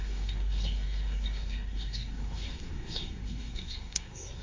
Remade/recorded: remade